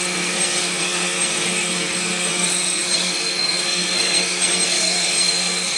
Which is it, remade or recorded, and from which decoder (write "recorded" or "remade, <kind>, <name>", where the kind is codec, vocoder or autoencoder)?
remade, codec, SNAC